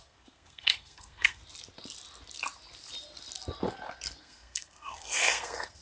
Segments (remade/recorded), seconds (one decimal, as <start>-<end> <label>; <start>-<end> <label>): 0.0-1.4 remade; 1.4-4.2 recorded; 4.2-5.8 remade

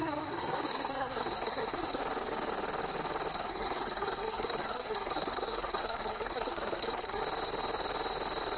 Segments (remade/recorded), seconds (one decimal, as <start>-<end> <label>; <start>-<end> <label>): 0.0-2.0 remade; 2.0-3.3 recorded; 3.3-7.2 remade; 7.2-8.6 recorded

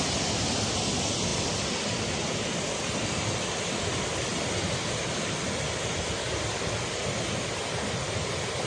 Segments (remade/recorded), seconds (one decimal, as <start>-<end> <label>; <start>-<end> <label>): 0.0-8.7 recorded

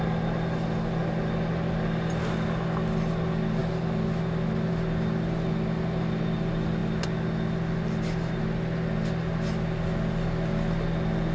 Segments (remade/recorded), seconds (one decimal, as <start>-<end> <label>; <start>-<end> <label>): 0.0-11.3 recorded

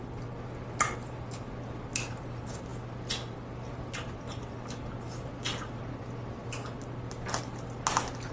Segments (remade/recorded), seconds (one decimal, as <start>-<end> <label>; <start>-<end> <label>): 0.0-8.3 recorded